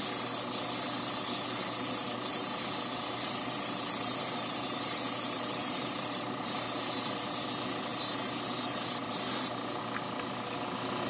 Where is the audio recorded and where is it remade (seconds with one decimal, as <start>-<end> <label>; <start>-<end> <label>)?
0.0-2.3 recorded; 2.3-7.0 remade; 7.0-7.9 recorded; 7.9-9.8 remade; 9.8-11.1 recorded